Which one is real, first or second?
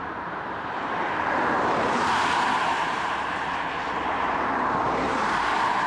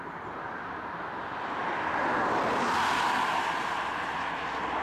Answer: second